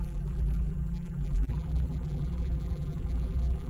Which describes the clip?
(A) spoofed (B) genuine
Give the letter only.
A